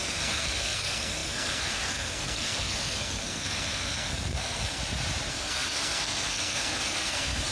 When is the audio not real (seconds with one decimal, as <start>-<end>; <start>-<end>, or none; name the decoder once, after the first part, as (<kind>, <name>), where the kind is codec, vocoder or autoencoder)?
0.0-4.8 (codec, SNAC); 5.3-7.5